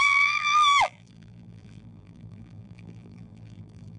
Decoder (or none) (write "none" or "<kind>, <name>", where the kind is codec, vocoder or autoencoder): vocoder, BigVGAN v2